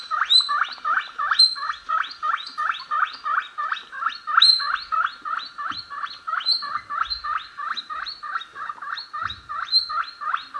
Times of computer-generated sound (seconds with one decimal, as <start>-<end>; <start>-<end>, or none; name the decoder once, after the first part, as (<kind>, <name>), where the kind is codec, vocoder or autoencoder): 0.0-8.5 (vocoder, BigVGAN v2); 10.0-10.6